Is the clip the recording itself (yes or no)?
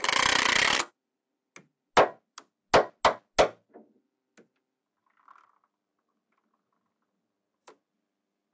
yes